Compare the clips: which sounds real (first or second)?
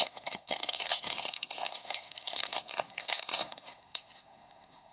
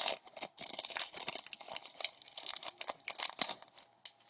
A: second